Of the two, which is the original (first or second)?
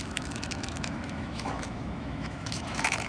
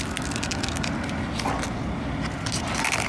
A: second